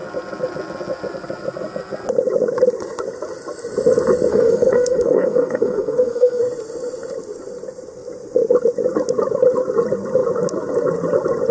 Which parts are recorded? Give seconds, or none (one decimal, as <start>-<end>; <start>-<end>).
0.0-4.3; 6.4-11.5

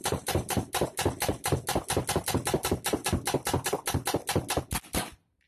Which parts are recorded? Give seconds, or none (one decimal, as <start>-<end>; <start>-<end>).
0.6-5.5

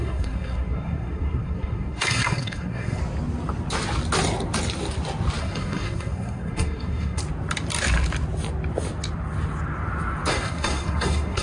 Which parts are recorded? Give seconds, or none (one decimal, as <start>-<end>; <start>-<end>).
3.0-5.4; 7.2-10.3

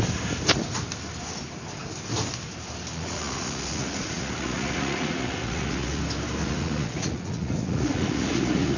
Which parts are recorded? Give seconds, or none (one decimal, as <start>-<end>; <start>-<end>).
0.0-2.9; 6.0-6.4

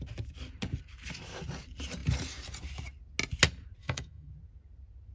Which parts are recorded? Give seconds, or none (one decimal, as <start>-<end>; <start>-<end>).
0.0-3.8; 4.3-5.1

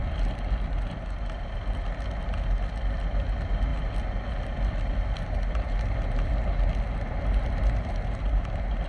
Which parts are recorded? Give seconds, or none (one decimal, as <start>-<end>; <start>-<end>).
0.0-8.9

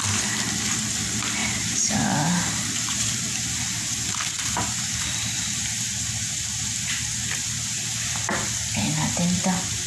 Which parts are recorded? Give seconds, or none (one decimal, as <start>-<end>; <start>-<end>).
0.0-1.4; 6.1-9.9